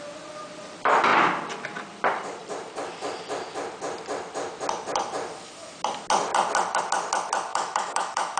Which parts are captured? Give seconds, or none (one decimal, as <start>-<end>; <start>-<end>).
0.0-7.5